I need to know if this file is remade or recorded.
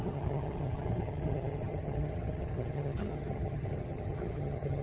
remade